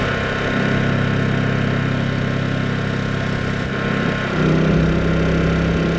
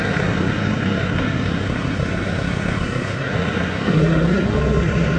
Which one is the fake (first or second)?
second